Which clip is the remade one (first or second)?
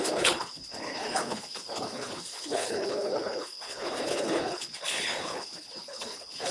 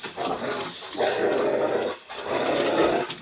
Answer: first